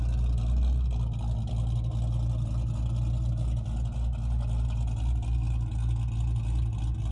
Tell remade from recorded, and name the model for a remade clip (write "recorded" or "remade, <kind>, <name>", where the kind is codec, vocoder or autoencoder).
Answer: recorded